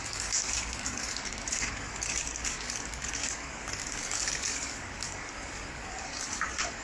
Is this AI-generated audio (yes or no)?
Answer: yes